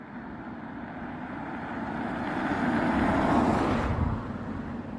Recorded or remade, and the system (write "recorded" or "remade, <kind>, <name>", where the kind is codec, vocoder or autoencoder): remade, vocoder, BigVGAN v2